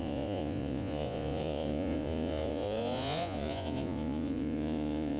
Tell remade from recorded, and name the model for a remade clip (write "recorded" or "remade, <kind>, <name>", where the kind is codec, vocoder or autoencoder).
remade, vocoder, Vocos